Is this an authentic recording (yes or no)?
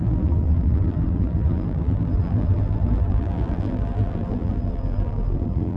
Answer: no